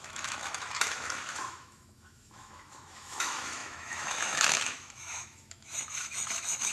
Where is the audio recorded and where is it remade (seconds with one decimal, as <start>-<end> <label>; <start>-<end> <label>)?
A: 0.0-6.7 remade